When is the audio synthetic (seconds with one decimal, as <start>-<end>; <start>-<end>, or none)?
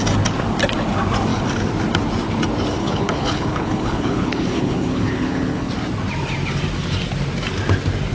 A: 2.8-5.7